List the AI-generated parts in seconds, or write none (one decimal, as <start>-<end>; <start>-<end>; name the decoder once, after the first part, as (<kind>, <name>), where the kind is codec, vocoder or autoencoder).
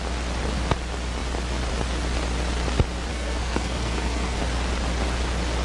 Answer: 3.1-4.4 (codec, SNAC)